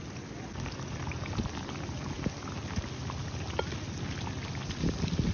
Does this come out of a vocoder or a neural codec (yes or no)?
no